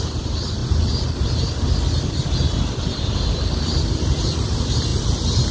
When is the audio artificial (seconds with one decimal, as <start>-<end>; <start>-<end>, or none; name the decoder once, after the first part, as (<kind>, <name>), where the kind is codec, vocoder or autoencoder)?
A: none